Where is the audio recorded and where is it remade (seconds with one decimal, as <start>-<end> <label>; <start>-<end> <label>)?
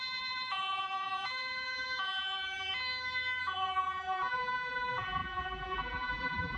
0.0-2.7 remade; 2.7-3.4 recorded; 3.4-6.6 remade